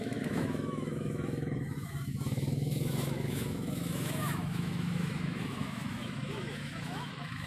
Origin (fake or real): fake